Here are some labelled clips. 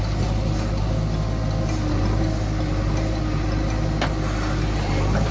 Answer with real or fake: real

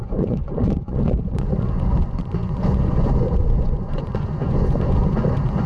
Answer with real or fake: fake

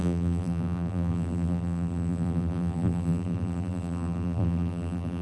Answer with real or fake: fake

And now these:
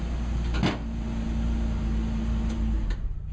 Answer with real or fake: real